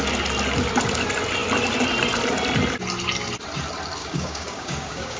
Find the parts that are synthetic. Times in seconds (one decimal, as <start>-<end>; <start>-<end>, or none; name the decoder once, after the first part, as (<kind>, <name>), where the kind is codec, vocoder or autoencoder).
4.0-5.2 (codec, DAC)